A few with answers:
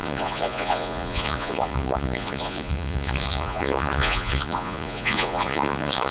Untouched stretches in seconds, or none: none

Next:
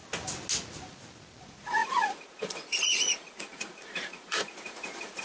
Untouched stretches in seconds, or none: 0.0-1.4

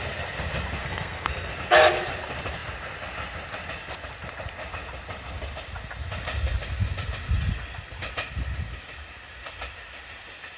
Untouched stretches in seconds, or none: 0.0-0.8; 1.5-10.6

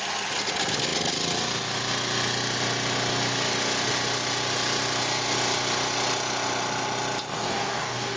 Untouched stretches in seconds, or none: 0.0-7.3

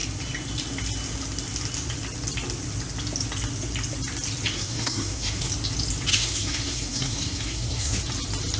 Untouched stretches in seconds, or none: 0.0-4.5; 5.5-6.1; 8.0-8.6

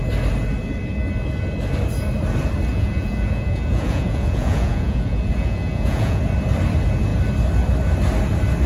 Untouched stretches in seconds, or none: 0.0-2.7; 6.2-8.7

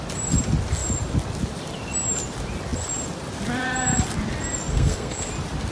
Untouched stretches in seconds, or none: 0.0-4.7; 5.3-5.7

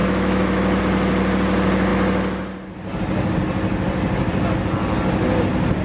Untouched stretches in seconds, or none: 0.8-5.8